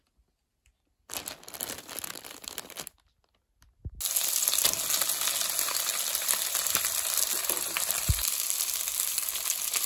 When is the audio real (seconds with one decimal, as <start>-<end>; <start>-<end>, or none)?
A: 0.0-6.1; 8.9-9.9